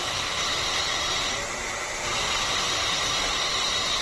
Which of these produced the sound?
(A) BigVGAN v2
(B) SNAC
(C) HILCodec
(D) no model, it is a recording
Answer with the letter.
D